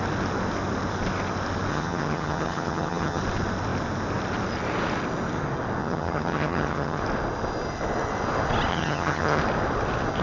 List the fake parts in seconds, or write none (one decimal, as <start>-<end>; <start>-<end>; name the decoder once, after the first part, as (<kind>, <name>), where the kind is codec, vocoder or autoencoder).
1.7-3.2 (vocoder, HiFi-GAN); 5.8-7.0; 8.7-9.4